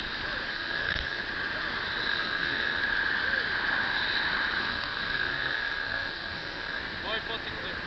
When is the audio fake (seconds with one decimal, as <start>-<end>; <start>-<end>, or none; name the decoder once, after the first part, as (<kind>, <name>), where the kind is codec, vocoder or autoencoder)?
0.5-1.2 (codec, SNAC); 2.1-2.8; 4.6-6.8